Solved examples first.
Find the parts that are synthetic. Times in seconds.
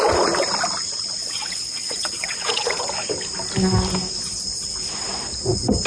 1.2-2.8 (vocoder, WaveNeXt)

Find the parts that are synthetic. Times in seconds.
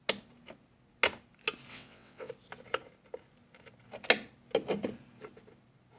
1.7-2.3 (vocoder, WaveNeXt)